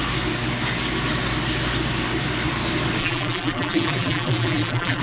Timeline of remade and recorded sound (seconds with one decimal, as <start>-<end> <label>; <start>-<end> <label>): 0.0-3.0 recorded; 3.0-5.0 remade